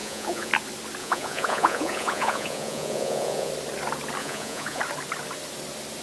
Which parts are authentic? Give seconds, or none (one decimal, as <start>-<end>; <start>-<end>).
0.5-1.0; 3.5-4.2; 4.8-6.0